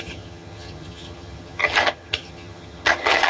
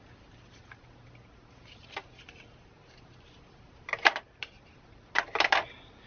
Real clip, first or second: second